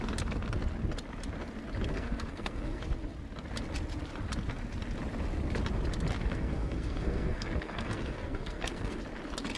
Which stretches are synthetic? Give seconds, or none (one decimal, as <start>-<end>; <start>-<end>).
1.9-2.8; 6.2-9.0